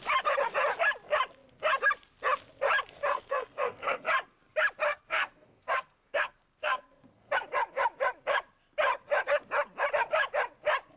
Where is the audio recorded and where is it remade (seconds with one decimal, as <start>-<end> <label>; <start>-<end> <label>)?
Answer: 0.0-3.1 recorded; 3.1-4.0 remade; 4.0-4.9 recorded; 4.9-7.3 remade; 7.3-11.0 recorded

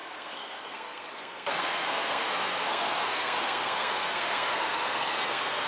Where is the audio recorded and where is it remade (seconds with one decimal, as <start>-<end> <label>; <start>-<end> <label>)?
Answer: 0.0-5.7 remade

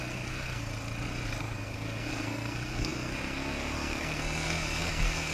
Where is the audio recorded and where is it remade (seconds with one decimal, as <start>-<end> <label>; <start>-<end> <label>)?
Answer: 0.0-0.7 remade; 0.7-1.4 recorded; 1.4-5.3 remade

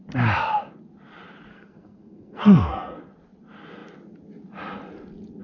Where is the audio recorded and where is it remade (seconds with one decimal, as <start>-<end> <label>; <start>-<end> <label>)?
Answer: 0.0-1.5 recorded; 1.5-3.0 remade; 3.0-5.4 recorded